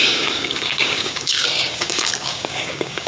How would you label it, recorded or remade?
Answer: remade